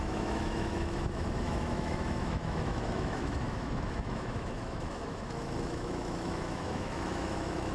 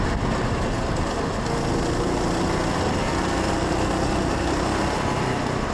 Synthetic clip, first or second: first